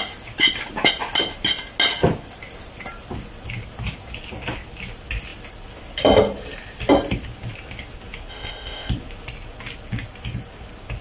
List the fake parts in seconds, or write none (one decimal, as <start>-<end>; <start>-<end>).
8.3-8.9